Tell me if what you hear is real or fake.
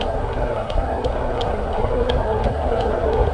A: fake